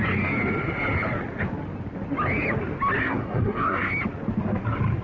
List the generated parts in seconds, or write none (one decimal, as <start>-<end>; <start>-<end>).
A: 3.0-3.9